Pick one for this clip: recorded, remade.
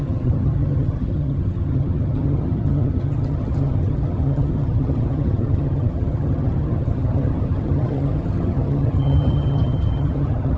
remade